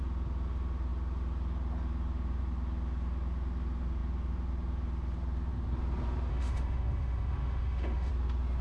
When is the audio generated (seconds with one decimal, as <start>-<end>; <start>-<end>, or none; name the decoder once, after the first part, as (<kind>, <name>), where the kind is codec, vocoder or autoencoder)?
6.3-8.1 (autoencoder, DAC-VAE)